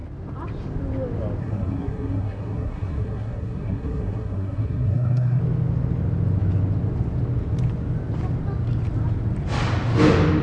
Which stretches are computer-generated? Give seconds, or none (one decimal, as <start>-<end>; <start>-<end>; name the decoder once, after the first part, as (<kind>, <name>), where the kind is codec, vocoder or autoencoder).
1.4-5.4 (codec, SNAC)